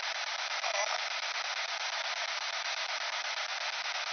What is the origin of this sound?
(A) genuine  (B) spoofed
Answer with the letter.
A